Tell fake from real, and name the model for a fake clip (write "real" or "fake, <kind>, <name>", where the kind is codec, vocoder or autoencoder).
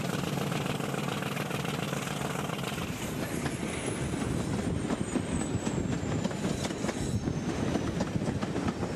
real